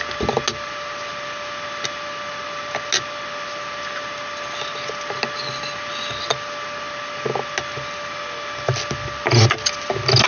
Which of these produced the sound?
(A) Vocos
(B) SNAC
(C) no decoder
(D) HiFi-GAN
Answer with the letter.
C